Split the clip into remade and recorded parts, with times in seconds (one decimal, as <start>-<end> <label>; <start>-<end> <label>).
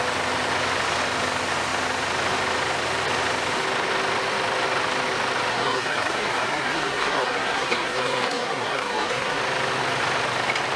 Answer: 0.0-5.5 recorded; 5.5-9.4 remade; 9.4-10.8 recorded